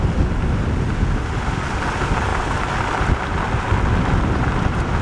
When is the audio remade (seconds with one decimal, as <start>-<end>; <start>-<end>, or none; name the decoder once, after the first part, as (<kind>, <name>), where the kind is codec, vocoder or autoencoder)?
none

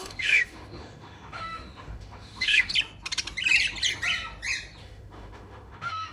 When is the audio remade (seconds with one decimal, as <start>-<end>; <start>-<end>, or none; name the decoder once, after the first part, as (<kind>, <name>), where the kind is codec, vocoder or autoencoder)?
0.0-2.7 (autoencoder, DAC-VAE); 4.8-6.1

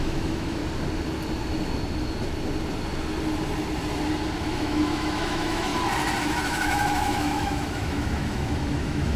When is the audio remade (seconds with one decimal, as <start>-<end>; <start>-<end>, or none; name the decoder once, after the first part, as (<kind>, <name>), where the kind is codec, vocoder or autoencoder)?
0.0-0.6 (autoencoder, DAC-VAE); 4.4-5.7; 6.2-9.2